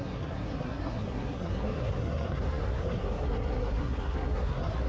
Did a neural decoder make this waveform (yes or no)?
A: yes